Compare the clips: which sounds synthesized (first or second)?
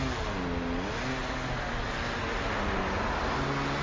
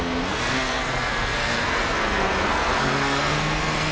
second